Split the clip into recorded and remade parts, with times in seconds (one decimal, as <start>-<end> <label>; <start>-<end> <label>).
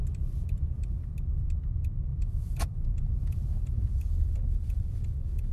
0.0-2.1 recorded; 2.1-5.5 remade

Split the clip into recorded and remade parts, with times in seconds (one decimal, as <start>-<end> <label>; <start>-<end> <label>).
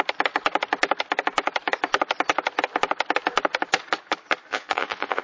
0.0-4.5 recorded; 4.5-5.2 remade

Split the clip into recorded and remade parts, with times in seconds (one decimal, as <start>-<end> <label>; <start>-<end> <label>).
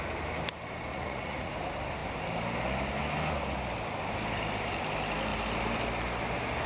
0.0-0.9 recorded; 0.9-1.5 remade; 1.5-6.7 recorded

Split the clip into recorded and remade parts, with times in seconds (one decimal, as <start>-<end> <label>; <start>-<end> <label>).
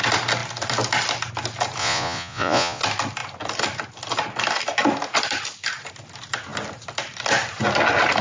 0.0-1.8 recorded; 1.8-2.8 remade; 2.8-8.2 recorded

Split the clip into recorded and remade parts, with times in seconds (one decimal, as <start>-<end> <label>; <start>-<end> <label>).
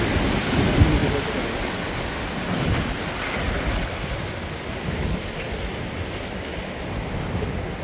0.0-7.8 recorded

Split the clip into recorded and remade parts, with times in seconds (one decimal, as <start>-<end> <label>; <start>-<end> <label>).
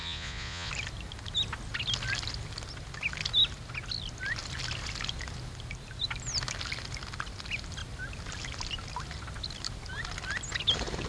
0.0-0.7 remade; 0.7-11.1 recorded